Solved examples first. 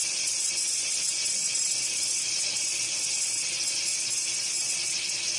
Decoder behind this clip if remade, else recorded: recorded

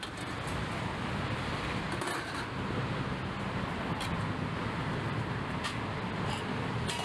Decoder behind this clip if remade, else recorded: recorded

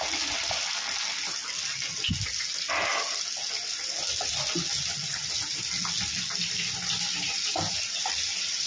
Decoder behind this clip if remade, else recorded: recorded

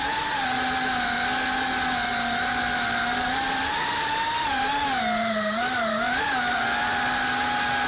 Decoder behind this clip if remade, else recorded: recorded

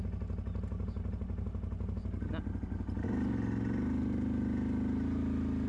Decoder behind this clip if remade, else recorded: recorded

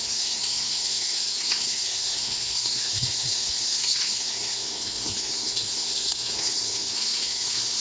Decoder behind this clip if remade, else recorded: remade, codec, SNAC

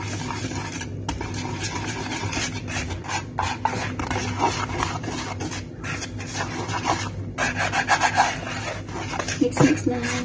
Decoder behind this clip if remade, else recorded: recorded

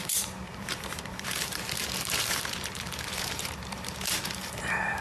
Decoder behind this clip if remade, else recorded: remade, vocoder, BigVGAN v2